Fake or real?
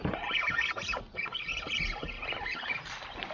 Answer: real